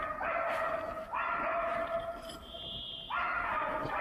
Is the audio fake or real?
real